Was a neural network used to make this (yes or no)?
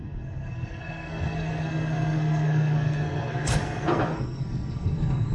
yes